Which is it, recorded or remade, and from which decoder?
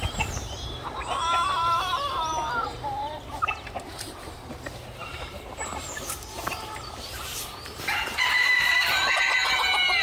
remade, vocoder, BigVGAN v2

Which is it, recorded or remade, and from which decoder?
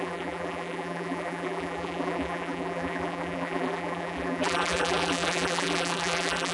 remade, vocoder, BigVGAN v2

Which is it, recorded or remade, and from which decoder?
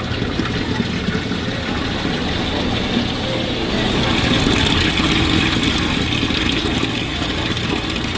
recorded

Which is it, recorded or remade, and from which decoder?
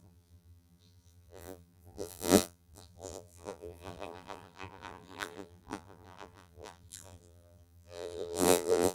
remade, vocoder, BigVGAN v2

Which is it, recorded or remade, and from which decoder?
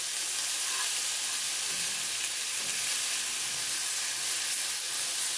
recorded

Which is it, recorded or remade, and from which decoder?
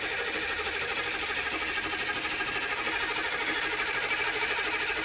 recorded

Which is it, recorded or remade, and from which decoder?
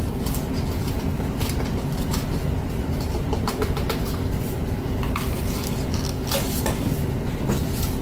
recorded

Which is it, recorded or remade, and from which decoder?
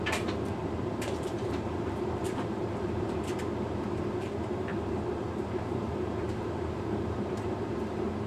remade, vocoder, BigVGAN v2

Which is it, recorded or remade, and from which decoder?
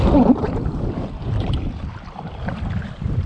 remade, vocoder, BigVGAN v2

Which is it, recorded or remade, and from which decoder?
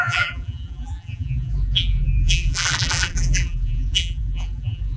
remade, vocoder, BigVGAN v2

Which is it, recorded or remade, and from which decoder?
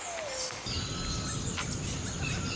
recorded